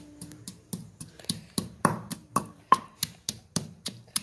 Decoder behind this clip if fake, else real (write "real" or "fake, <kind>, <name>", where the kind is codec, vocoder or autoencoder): fake, vocoder, BigVGAN v2